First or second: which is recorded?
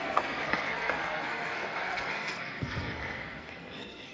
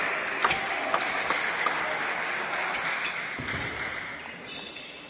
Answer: second